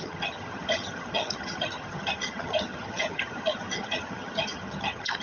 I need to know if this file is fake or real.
fake